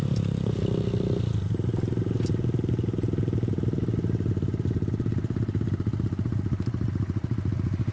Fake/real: real